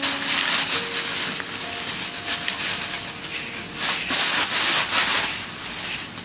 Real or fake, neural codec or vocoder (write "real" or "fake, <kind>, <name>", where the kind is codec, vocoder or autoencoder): real